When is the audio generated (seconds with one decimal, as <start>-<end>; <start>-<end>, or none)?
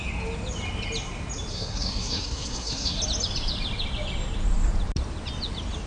1.5-3.0